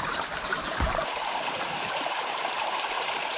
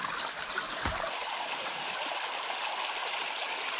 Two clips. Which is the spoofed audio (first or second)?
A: first